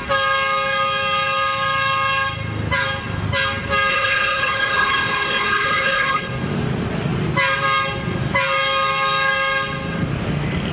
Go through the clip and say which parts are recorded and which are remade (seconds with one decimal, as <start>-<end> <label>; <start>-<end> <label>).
0.0-3.9 recorded; 3.9-6.3 remade; 6.3-10.7 recorded